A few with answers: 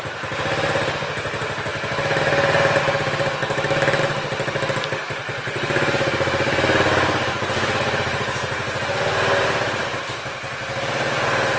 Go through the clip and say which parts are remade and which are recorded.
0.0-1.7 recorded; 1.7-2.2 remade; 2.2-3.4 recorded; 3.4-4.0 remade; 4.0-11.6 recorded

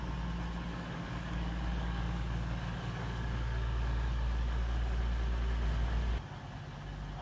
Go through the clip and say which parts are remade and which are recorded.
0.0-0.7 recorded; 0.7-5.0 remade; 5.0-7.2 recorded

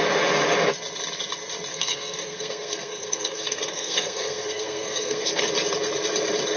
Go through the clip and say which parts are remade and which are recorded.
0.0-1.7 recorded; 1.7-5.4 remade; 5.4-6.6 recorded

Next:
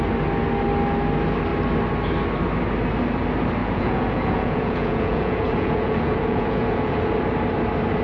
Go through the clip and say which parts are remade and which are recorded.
0.0-3.6 recorded; 3.6-7.1 remade; 7.1-8.0 recorded

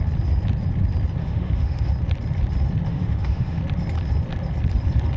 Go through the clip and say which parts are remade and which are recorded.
0.0-1.2 recorded; 1.2-1.9 remade; 1.9-2.9 recorded; 2.9-3.6 remade; 3.6-5.2 recorded

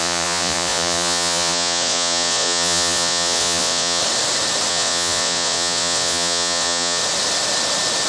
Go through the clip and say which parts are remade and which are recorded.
0.0-4.0 remade; 4.0-4.7 recorded; 4.7-7.0 remade; 7.0-8.1 recorded

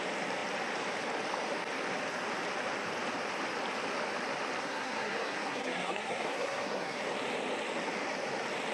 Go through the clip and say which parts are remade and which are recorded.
0.0-4.6 recorded; 4.6-7.0 remade; 7.0-8.7 recorded

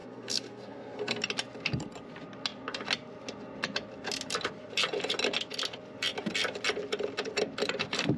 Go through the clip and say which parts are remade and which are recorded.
0.0-1.2 remade; 1.2-8.2 recorded